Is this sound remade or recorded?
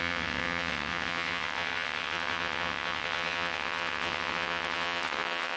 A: remade